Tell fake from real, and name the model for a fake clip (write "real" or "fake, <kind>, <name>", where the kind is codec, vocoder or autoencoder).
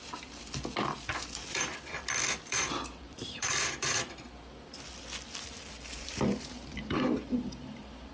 fake, vocoder, BigVGAN v2